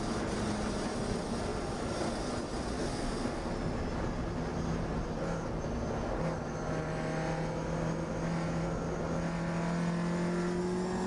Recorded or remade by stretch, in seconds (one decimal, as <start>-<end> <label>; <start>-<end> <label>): 0.0-2.8 recorded; 2.8-3.5 remade; 3.5-11.1 recorded